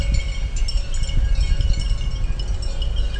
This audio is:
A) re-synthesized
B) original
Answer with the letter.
B